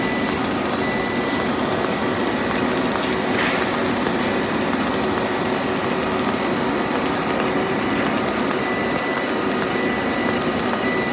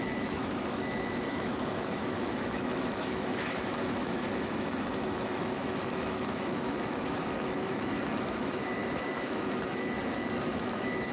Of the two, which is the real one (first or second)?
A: first